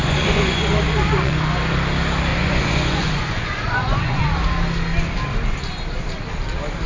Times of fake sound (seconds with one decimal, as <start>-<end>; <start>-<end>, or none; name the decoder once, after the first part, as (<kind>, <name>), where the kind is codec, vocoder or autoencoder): 0.0-1.4 (vocoder, Vocos); 2.3-4.2